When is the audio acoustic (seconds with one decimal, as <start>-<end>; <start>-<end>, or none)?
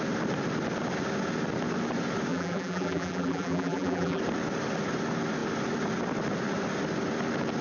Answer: 0.0-2.3; 4.2-7.6